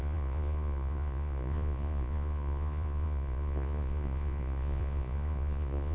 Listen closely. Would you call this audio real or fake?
fake